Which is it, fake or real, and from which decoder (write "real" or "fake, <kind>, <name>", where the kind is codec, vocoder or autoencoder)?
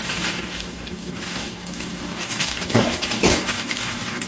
fake, codec, DAC